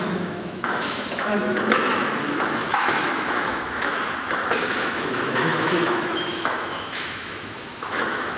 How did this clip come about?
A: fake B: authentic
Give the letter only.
A